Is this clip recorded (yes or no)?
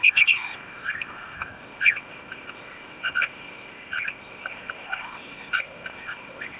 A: no